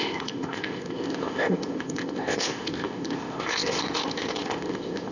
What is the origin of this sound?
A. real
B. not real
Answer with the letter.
B